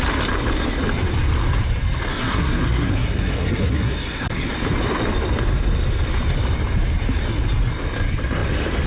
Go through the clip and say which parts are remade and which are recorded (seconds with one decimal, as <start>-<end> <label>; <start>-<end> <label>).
0.0-2.1 recorded; 2.1-4.5 remade; 4.5-8.9 recorded